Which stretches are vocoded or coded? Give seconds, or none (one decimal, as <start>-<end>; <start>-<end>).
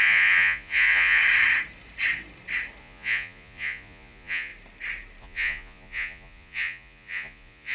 0.0-1.2; 2.8-4.5; 5.2-7.7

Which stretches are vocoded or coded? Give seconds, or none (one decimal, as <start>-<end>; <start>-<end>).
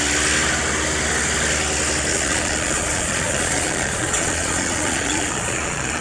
2.1-6.0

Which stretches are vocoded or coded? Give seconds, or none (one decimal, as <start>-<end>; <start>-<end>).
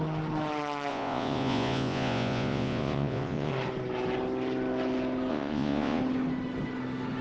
0.9-3.5; 5.3-6.0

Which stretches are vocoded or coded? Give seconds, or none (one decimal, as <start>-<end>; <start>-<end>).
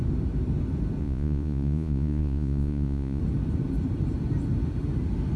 1.0-3.2